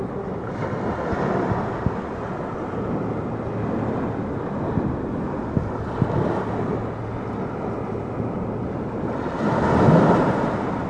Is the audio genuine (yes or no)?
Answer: yes